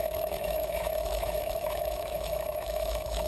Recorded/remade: remade